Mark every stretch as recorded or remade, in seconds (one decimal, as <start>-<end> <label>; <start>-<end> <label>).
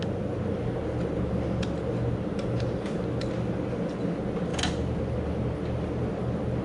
0.0-6.6 recorded